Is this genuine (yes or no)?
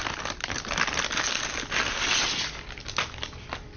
yes